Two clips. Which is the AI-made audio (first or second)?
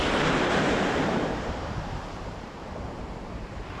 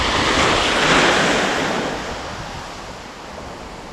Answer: first